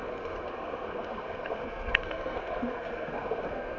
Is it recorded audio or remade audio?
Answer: remade